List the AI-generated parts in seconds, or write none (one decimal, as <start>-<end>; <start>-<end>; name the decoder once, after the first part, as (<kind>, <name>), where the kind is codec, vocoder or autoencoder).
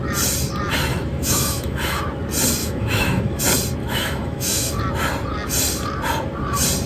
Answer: 0.9-2.0 (autoencoder, DAC-VAE); 2.6-3.4; 3.8-4.7